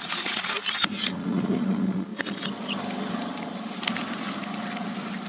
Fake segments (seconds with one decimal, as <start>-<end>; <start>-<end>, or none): 0.0-2.1